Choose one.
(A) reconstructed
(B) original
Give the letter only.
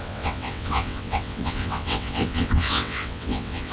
A